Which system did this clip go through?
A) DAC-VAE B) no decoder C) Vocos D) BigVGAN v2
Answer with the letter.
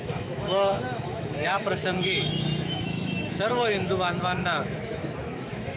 A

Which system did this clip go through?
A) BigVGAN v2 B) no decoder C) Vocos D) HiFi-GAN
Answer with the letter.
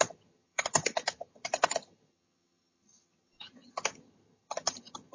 D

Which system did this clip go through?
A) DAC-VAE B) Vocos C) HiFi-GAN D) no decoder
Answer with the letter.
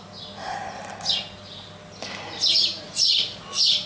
D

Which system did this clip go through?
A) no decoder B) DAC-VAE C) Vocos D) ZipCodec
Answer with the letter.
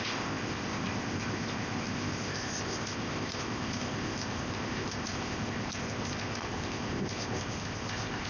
D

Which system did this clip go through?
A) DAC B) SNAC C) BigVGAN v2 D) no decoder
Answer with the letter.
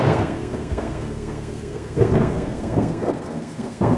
B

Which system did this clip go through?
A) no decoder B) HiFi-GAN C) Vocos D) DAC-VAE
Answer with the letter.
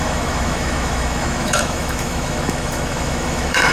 D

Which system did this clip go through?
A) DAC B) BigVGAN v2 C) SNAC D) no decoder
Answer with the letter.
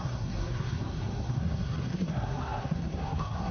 C